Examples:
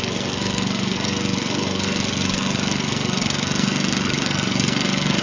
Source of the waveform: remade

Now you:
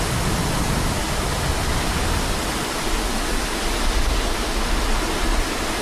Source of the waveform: recorded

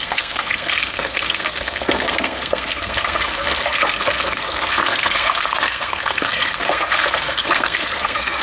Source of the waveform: remade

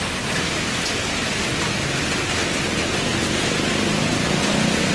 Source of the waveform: recorded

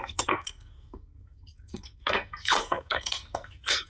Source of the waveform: remade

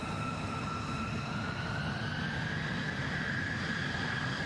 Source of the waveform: recorded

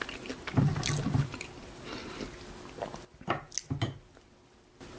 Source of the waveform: recorded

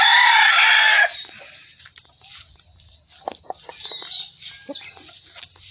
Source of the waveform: recorded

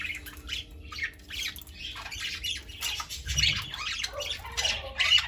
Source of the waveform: recorded